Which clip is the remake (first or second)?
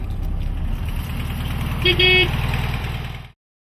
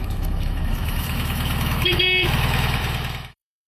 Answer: second